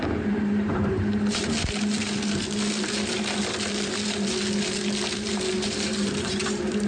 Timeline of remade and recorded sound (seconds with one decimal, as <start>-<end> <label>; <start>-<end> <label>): 0.0-1.4 remade; 1.4-5.3 recorded; 5.3-6.9 remade